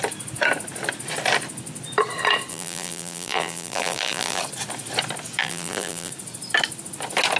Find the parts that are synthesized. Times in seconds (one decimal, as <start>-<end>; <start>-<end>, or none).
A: 2.5-4.4; 5.4-6.1